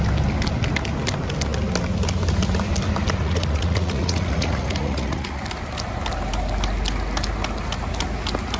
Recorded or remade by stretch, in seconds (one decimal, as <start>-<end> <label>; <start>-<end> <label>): 0.0-3.2 recorded; 3.2-5.4 remade; 5.4-8.6 recorded